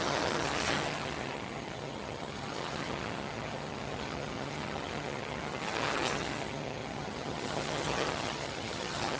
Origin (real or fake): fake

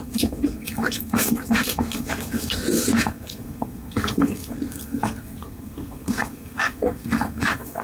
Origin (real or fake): fake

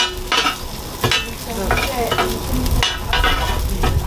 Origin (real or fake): real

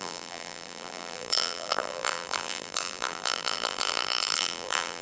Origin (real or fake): fake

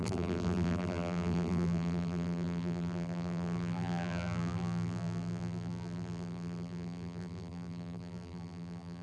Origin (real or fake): fake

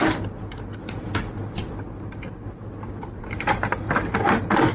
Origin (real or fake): real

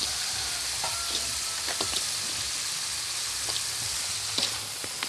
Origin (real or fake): real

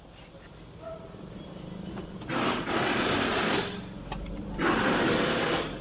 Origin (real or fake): real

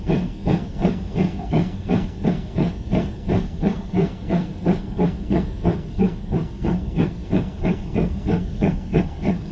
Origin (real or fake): fake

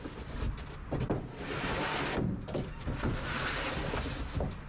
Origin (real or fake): real